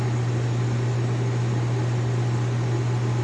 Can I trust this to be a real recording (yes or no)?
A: yes